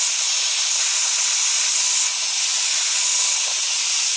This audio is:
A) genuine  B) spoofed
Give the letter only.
A